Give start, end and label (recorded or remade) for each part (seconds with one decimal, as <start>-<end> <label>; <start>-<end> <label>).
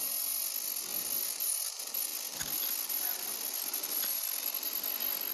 0.0-5.3 recorded